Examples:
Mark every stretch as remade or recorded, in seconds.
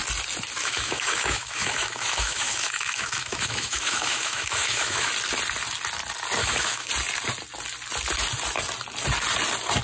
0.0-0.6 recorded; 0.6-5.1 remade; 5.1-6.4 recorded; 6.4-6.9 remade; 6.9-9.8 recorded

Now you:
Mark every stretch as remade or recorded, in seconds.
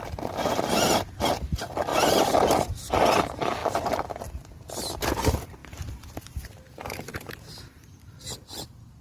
0.0-5.6 recorded; 5.6-7.5 remade; 7.5-9.0 recorded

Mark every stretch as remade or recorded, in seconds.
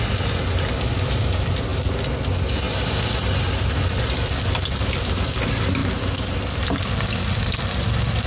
0.0-8.3 recorded